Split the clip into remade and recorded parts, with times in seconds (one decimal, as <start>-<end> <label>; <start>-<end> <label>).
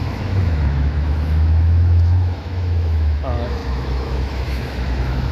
0.0-5.3 remade